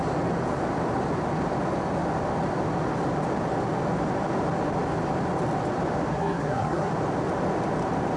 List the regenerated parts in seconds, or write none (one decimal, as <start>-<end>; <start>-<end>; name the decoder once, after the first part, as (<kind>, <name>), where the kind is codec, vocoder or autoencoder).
6.1-6.9 (codec, SNAC)

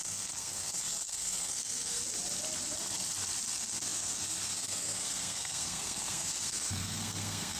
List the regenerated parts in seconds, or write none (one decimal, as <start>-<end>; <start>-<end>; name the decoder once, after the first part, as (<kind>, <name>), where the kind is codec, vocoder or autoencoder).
0.0-2.0 (codec, SNAC); 3.5-7.6

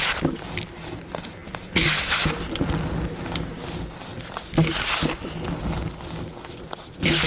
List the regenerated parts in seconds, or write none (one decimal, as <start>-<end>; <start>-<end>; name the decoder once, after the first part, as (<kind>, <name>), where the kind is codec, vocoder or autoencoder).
none

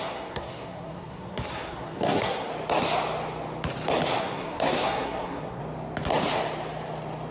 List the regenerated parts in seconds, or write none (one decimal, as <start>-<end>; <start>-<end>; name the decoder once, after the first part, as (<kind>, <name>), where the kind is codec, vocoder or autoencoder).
0.0-2.5 (codec, SNAC); 4.2-5.6